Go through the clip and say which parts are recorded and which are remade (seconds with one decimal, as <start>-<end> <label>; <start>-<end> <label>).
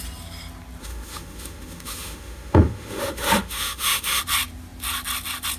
0.0-0.8 recorded; 0.8-4.2 remade; 4.2-5.6 recorded